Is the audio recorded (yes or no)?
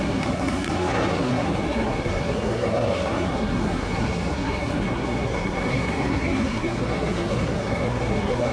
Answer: no